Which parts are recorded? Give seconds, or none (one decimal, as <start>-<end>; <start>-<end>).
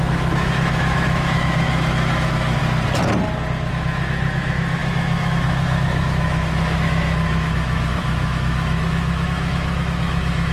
2.6-3.7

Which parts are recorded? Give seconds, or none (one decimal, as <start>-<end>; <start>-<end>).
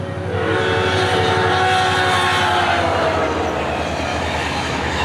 0.0-4.1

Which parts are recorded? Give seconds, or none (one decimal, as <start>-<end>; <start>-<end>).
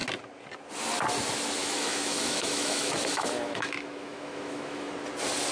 0.0-1.6; 4.9-5.5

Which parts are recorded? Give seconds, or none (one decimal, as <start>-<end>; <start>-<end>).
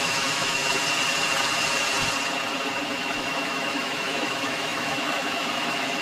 0.6-3.0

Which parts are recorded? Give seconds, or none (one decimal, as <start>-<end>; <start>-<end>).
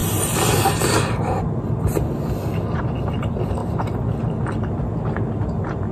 0.0-5.9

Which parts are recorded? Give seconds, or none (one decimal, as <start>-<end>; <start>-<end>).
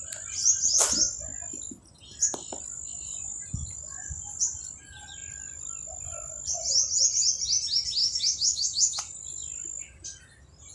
0.0-8.0; 9.0-10.7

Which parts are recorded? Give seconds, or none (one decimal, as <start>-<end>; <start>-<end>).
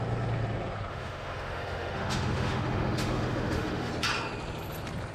0.0-0.9; 3.9-5.1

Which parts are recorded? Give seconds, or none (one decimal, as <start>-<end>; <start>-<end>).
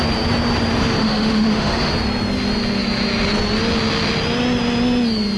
0.0-1.0; 1.9-5.4